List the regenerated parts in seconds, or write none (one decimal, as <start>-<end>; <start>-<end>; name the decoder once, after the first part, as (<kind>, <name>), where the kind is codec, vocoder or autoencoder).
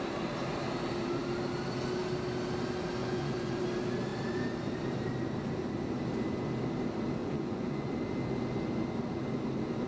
3.0-3.6 (vocoder, Vocos); 7.2-7.9